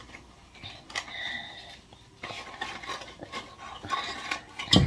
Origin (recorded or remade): remade